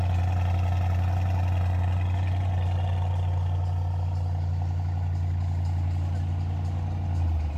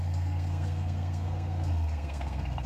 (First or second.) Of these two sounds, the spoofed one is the second